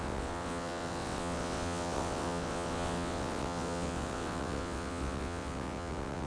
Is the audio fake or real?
fake